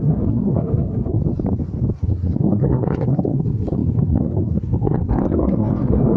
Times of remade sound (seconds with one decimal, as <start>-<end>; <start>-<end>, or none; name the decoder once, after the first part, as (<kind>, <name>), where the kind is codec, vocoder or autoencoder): 0.0-1.2 (codec, SNAC); 2.0-6.2